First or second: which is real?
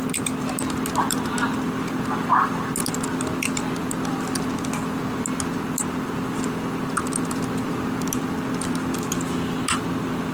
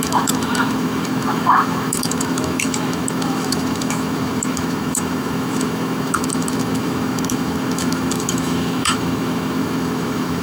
first